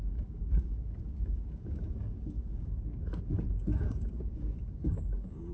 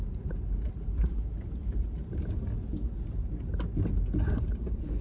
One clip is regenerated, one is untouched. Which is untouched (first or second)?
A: second